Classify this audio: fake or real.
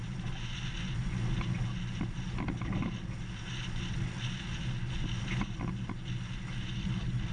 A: real